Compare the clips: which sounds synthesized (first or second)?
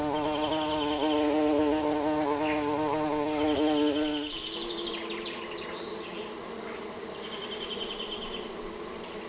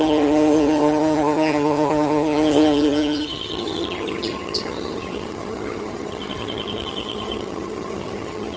second